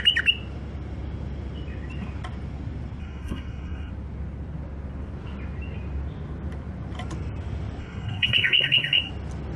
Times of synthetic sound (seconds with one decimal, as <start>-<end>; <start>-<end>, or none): 3.0-3.9; 7.8-9.1